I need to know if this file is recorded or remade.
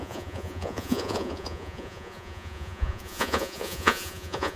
remade